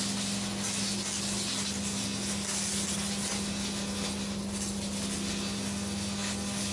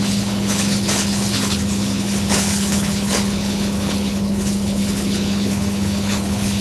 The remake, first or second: second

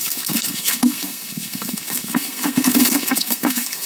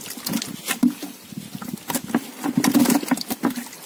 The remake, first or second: first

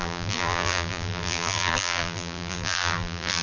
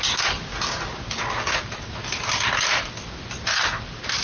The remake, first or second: first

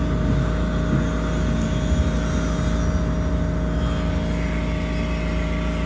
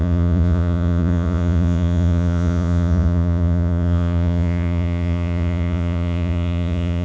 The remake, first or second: second